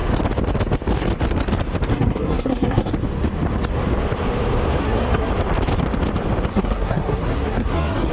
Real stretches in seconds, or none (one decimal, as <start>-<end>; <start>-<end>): 0.0-1.9; 2.9-4.8; 5.3-6.5